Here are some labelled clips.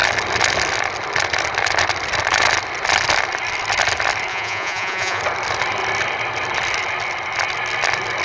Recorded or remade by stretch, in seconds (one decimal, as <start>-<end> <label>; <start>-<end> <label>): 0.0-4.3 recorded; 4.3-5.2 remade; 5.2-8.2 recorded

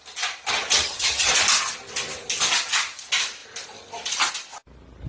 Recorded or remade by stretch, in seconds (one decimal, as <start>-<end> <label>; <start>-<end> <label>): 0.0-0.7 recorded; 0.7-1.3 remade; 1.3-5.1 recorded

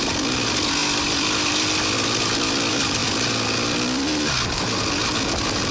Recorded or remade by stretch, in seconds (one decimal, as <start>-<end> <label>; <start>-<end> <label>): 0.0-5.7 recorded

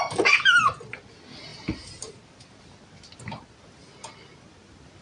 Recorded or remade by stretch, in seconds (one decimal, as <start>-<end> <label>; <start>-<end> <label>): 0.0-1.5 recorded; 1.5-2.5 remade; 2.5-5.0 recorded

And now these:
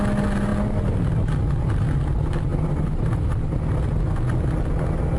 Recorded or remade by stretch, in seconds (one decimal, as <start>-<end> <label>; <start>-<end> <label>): 0.0-2.5 recorded; 2.5-3.2 remade; 3.2-5.2 recorded

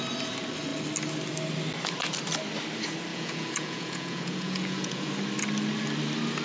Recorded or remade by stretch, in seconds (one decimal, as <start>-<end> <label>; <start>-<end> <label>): 0.0-3.1 recorded; 3.1-5.1 remade; 5.1-6.4 recorded

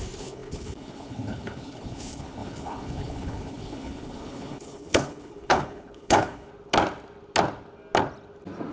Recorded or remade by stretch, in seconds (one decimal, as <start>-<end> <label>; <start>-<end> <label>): 0.0-6.5 remade; 6.5-8.7 recorded

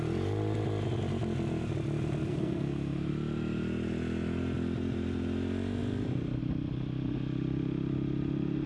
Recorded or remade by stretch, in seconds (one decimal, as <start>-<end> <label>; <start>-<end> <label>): 0.0-2.3 recorded; 2.3-3.1 remade; 3.1-8.7 recorded